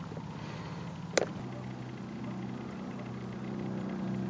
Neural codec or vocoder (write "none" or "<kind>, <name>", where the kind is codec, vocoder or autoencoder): none